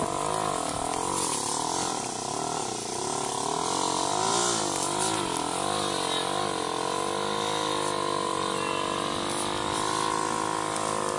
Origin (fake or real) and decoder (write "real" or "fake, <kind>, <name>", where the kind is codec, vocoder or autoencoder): real